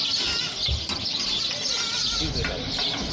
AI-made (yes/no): no